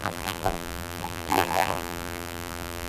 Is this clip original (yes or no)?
no